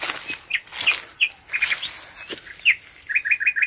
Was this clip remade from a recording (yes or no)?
no